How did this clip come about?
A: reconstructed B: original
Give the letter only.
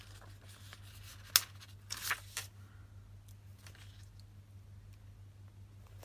B